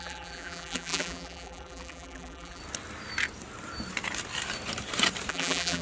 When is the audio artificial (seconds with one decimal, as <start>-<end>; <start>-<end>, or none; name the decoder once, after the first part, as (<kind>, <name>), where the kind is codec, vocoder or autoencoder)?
0.0-2.6 (vocoder, BigVGAN v2); 5.3-5.8